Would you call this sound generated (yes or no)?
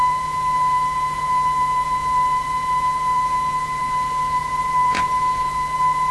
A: yes